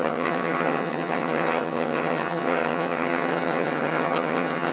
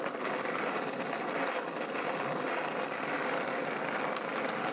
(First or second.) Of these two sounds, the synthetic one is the first